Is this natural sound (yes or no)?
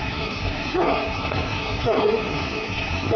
no